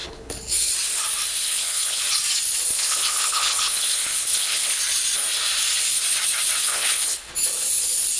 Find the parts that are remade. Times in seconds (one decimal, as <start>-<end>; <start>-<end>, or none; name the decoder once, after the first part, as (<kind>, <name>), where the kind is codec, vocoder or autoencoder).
0.0-0.7 (codec, HILCodec); 1.4-2.0; 2.7-4.8; 6.6-7.3